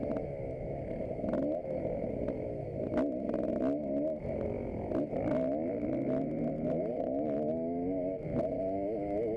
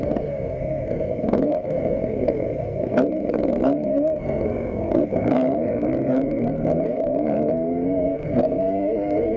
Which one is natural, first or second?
first